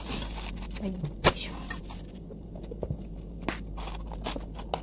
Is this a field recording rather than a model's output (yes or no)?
yes